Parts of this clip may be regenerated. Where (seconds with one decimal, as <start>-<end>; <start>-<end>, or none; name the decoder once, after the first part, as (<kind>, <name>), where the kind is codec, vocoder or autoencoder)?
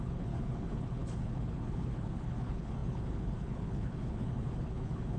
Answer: 0.0-5.2 (codec, HILCodec)